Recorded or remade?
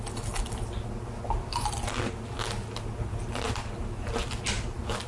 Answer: recorded